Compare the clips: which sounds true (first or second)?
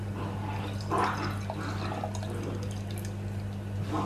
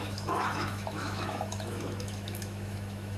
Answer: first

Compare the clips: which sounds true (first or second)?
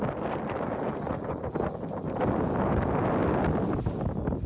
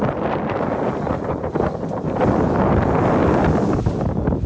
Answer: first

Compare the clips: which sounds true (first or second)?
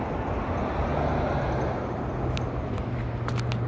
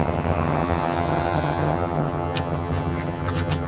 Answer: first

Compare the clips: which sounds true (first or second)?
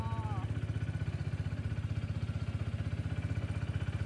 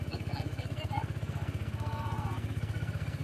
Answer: first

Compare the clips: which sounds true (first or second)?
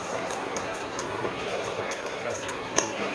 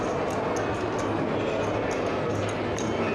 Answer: second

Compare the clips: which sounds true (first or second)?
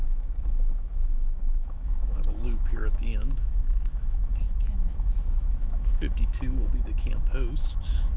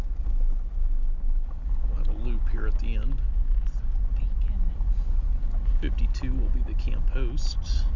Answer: second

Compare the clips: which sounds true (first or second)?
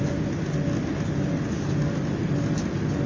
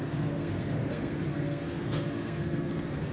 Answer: first